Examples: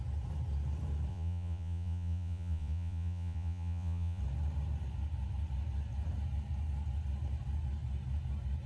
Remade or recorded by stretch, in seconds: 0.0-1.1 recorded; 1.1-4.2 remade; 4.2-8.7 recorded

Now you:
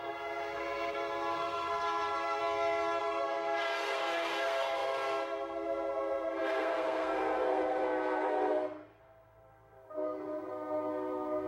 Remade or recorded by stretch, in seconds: 0.0-2.4 remade; 2.4-3.0 recorded; 3.0-11.5 remade

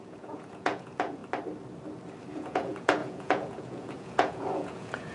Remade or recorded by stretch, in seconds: 0.0-1.2 remade; 1.2-2.3 recorded; 2.3-5.1 remade

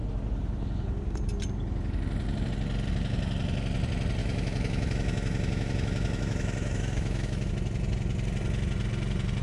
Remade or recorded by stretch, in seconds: 0.0-4.2 recorded; 4.2-7.5 remade; 7.5-9.4 recorded

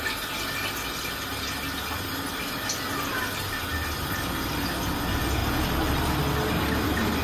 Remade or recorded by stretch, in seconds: 0.0-1.3 recorded; 1.3-2.3 remade; 2.3-5.4 recorded; 5.4-6.2 remade; 6.2-7.2 recorded

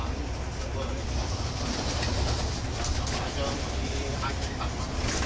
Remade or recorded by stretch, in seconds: 0.0-1.2 recorded; 1.2-4.3 remade; 4.3-5.3 recorded